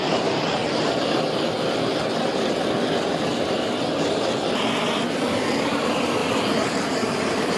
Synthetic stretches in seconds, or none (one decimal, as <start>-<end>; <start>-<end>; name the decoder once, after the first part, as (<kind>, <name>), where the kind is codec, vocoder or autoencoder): 0.0-0.6 (vocoder, BigVGAN v2); 5.1-7.6